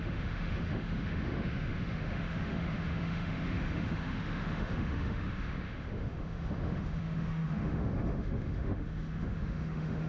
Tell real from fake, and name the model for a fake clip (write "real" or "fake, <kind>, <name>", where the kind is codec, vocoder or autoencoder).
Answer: fake, autoencoder, DAC-VAE